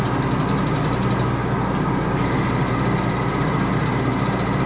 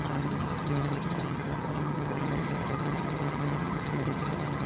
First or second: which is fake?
second